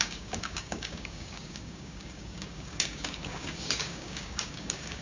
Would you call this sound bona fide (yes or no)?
no